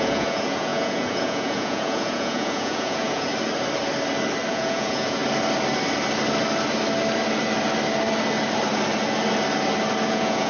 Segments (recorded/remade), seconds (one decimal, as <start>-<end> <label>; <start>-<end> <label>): 0.0-3.3 remade; 3.3-4.5 recorded; 4.5-5.2 remade; 5.2-10.1 recorded; 10.1-10.5 remade

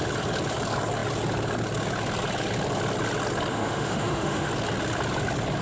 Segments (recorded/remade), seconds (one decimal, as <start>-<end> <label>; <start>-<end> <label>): 0.0-3.5 recorded; 3.5-4.5 remade; 4.5-5.6 recorded

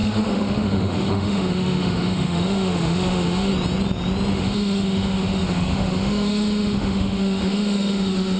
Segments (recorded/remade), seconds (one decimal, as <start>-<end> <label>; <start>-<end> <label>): 0.0-3.5 remade; 3.5-4.3 recorded; 4.3-8.4 remade

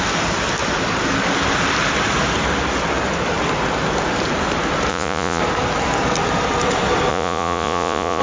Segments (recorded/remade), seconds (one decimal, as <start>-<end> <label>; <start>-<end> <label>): 0.0-4.9 recorded; 4.9-5.4 remade; 5.4-7.1 recorded; 7.1-8.2 remade